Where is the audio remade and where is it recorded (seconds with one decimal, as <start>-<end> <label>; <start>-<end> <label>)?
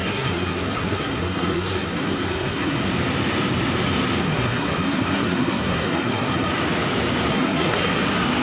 0.0-2.9 remade; 2.9-4.2 recorded; 4.2-6.5 remade; 6.5-7.3 recorded; 7.3-8.0 remade; 8.0-8.4 recorded